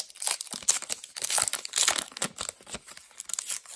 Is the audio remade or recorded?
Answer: recorded